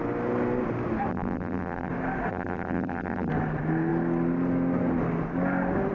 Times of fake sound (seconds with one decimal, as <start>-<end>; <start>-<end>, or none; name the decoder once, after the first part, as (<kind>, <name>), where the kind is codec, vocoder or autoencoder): 1.1-1.9 (vocoder, BigVGAN v2); 2.3-3.3